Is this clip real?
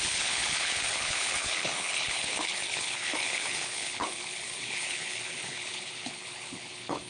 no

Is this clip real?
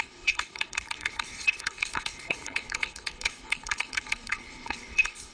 no